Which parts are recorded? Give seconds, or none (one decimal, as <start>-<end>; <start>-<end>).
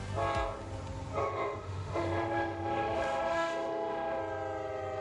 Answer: 0.0-1.2; 4.2-5.0